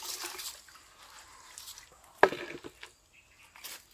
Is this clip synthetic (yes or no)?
no